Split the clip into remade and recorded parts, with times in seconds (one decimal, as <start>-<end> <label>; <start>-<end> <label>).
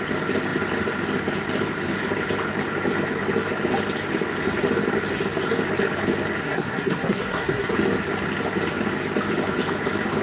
0.0-6.4 recorded; 6.4-7.7 remade; 7.7-10.2 recorded